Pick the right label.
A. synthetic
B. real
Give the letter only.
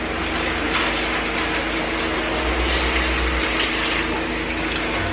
B